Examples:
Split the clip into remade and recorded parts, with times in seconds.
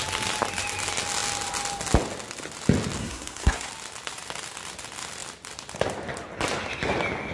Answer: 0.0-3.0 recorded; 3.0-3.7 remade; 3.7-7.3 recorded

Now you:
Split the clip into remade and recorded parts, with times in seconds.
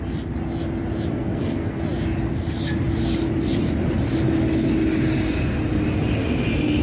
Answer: 0.0-1.1 recorded; 1.1-1.8 remade; 1.8-6.8 recorded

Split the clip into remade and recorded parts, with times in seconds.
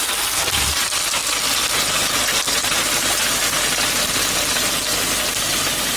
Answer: 0.0-6.0 recorded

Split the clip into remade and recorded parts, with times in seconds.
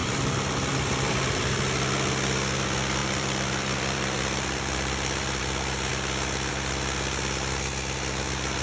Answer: 0.0-1.6 remade; 1.6-3.0 recorded; 3.0-5.4 remade; 5.4-8.6 recorded